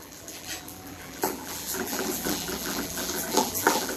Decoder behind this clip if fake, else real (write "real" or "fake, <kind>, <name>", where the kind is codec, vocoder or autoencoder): fake, vocoder, BigVGAN v2